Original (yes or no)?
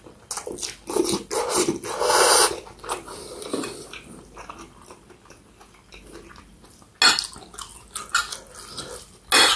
yes